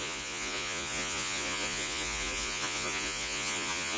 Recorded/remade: remade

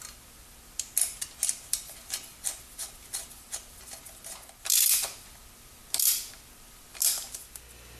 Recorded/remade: recorded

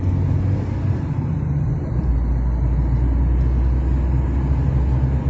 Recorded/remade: recorded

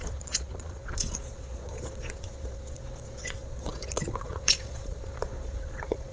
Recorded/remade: remade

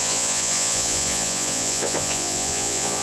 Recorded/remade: remade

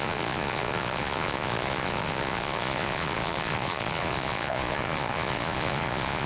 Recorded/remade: remade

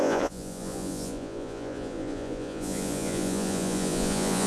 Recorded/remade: remade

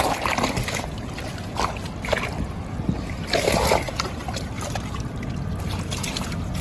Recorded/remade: recorded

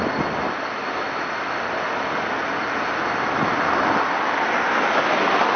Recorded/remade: recorded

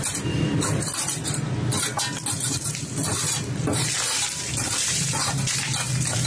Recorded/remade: recorded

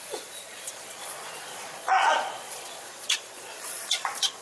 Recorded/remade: remade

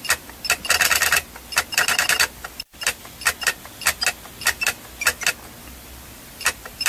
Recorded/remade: recorded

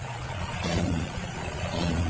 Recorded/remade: remade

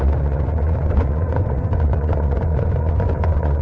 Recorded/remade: remade